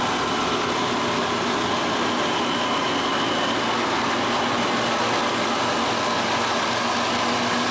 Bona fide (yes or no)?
yes